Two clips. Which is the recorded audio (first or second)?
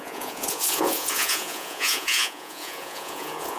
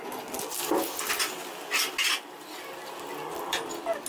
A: second